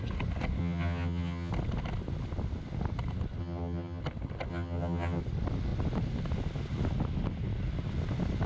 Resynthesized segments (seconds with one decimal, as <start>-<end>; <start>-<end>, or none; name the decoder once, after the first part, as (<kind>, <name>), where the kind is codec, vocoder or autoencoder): 0.6-1.5 (vocoder, HiFi-GAN); 3.4-4.0; 4.5-5.2